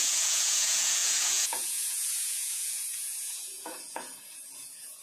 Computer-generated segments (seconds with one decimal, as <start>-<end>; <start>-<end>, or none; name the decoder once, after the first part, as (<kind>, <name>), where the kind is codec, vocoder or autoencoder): 0.0-5.0 (vocoder, Vocos)